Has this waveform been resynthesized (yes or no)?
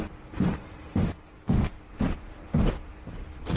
no